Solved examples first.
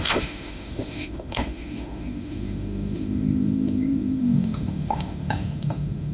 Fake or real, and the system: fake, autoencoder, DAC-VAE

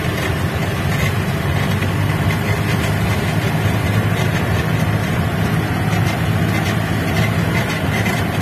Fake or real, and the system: real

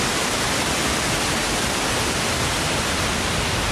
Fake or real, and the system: real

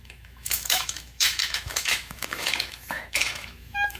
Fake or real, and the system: fake, autoencoder, DAC-VAE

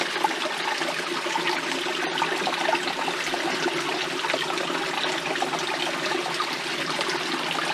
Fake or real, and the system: real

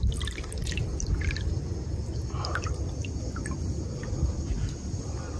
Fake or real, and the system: real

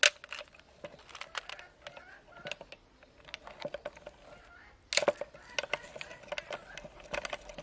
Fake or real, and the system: real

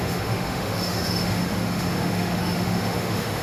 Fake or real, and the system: fake, autoencoder, DAC-VAE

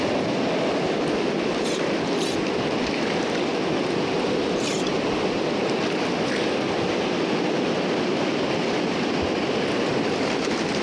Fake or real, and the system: real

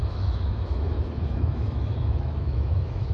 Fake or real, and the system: fake, autoencoder, DAC-VAE